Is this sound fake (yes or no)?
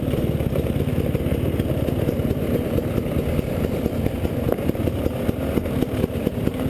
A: no